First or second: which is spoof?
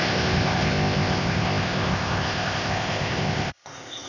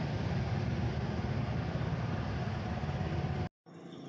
first